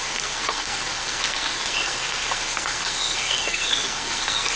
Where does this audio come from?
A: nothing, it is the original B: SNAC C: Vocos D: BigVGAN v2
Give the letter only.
B